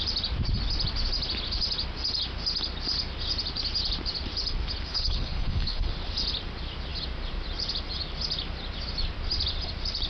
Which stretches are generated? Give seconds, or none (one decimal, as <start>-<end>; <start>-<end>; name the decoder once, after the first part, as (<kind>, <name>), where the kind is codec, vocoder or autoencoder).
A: 4.9-5.9 (codec, HILCodec)